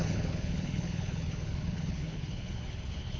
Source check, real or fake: fake